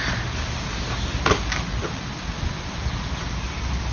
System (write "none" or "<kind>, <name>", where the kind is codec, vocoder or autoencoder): none